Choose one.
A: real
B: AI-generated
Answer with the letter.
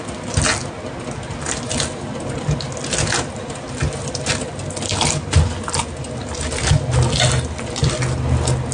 A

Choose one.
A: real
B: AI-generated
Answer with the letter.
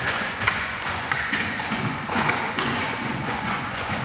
B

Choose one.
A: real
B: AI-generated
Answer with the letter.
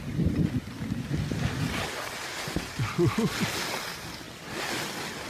A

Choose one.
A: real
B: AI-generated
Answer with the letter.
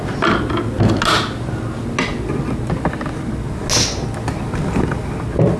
A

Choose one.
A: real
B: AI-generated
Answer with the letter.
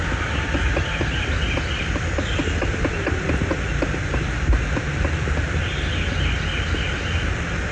A